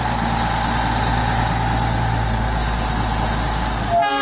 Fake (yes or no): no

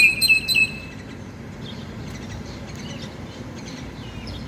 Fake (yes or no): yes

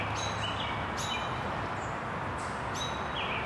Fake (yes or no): no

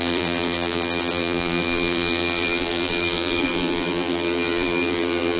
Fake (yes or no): yes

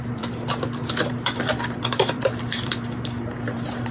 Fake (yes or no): yes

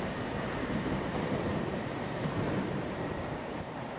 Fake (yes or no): yes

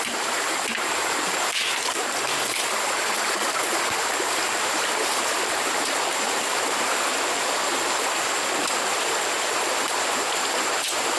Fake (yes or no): yes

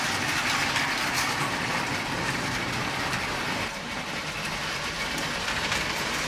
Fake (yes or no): yes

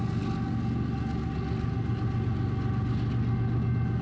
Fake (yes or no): no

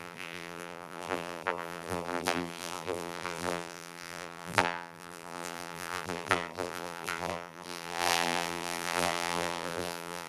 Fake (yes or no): yes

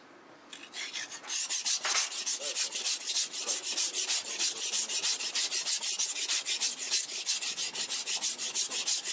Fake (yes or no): no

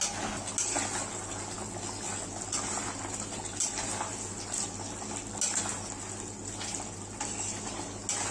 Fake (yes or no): no